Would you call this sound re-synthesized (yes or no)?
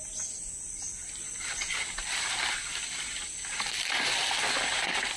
no